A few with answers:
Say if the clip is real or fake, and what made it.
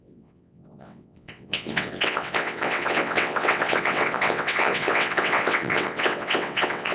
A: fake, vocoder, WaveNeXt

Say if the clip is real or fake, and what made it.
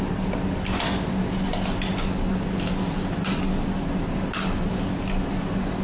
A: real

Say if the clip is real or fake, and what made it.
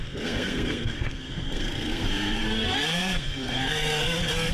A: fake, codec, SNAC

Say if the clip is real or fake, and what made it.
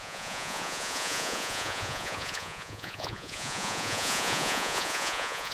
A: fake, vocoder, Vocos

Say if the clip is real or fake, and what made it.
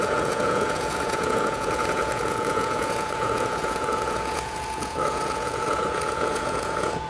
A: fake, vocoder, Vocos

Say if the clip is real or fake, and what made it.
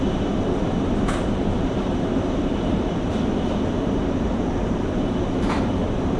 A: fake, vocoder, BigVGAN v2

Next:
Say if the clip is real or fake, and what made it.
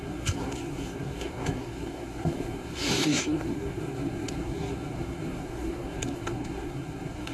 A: fake, codec, SNAC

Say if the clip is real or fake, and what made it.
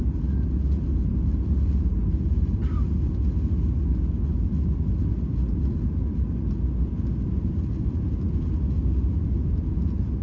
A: real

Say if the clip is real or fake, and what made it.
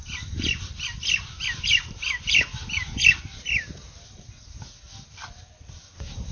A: real